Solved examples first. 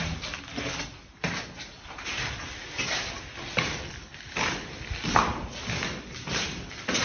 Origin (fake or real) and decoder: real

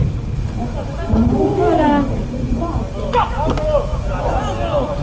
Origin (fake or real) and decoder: real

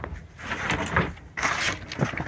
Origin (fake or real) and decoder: real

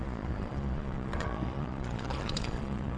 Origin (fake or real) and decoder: fake, vocoder, Vocos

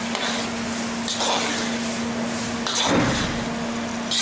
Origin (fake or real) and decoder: real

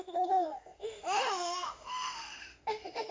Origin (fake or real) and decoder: fake, autoencoder, DAC-VAE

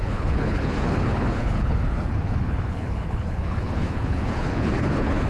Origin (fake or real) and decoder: fake, codec, HILCodec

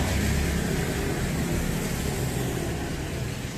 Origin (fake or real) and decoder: real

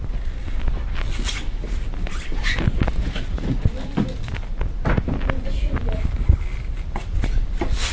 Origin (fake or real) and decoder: real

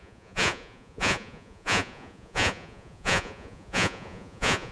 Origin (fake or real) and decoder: fake, vocoder, Vocos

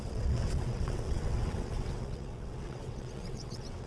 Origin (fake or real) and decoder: fake, vocoder, WaveNeXt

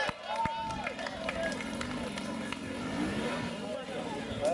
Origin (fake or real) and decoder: real